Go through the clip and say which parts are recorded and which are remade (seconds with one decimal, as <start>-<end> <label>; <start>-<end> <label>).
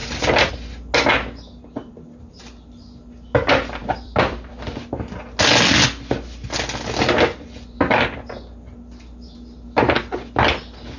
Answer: 0.0-0.5 remade; 0.5-3.8 recorded; 3.8-4.5 remade; 4.5-11.0 recorded